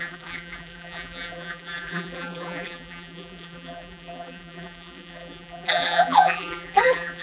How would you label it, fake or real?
fake